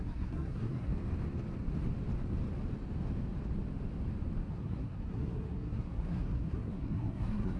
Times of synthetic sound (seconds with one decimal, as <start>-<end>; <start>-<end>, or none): 0.0-0.9; 4.5-7.6